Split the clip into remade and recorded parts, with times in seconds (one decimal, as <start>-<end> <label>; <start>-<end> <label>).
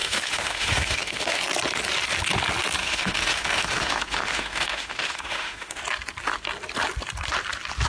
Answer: 0.0-1.4 remade; 1.4-2.8 recorded; 2.8-5.8 remade; 5.8-7.9 recorded